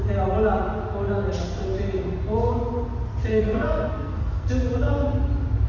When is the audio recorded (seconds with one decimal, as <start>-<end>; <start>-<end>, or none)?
0.0-3.3; 4.5-5.7

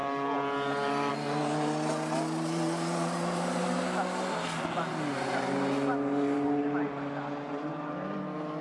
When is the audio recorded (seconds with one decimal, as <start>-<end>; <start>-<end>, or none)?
0.0-8.6

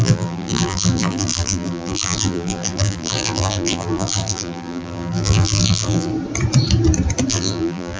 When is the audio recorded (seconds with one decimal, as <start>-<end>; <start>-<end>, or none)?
6.1-7.3